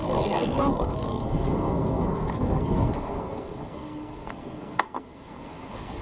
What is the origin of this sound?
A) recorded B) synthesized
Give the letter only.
B